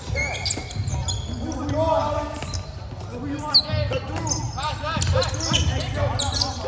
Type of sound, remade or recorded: recorded